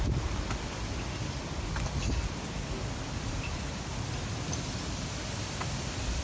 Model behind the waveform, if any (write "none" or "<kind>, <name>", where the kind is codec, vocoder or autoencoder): none